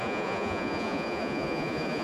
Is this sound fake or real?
fake